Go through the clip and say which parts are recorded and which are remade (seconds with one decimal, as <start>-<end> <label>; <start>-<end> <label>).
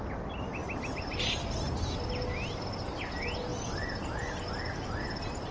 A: 0.0-5.5 recorded